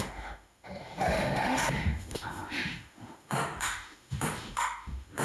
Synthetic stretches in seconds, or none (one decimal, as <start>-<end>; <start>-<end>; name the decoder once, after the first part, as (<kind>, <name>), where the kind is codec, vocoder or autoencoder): 0.0-5.2 (autoencoder, DAC-VAE)